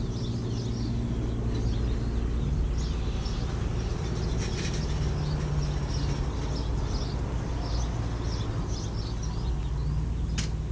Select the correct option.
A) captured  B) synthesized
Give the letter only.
A